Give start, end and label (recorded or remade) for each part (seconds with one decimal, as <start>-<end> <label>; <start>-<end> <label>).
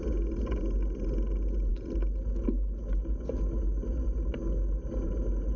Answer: 0.0-5.6 recorded